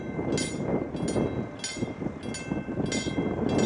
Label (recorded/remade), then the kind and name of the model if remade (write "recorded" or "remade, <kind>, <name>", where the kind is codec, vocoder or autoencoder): recorded